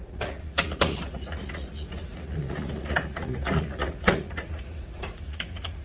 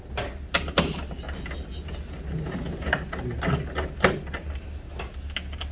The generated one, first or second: first